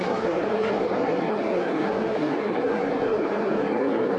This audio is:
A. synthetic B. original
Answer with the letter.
A